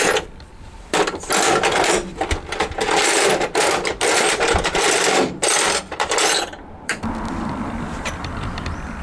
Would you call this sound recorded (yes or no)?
no